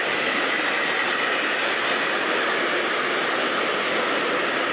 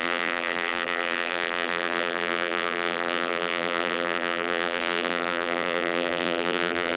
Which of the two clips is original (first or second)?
first